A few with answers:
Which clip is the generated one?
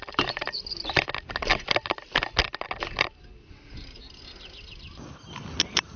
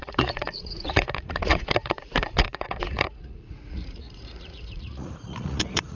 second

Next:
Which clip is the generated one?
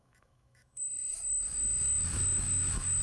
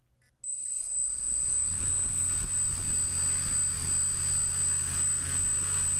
first